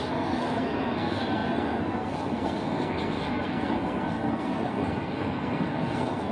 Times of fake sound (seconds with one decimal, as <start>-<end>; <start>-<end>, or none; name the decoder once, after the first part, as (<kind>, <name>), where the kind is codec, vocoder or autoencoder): 0.0-6.3 (codec, SNAC)